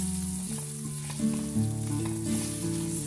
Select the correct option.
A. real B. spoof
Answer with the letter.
A